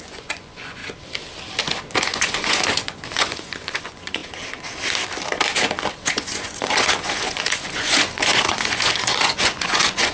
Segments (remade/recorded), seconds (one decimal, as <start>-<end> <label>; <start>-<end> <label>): 0.0-0.8 remade; 0.8-2.0 recorded; 2.0-4.2 remade; 4.2-5.9 recorded; 5.9-10.1 remade